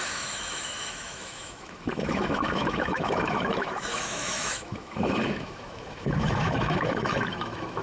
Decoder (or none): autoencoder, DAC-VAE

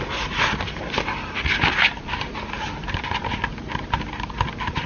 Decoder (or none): none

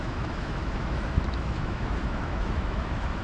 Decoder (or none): autoencoder, DAC-VAE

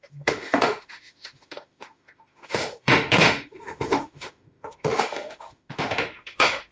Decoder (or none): autoencoder, DAC-VAE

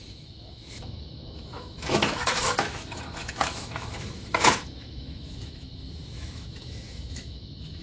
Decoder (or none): autoencoder, DAC-VAE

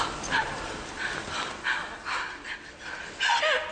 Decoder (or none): none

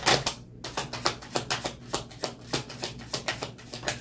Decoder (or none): none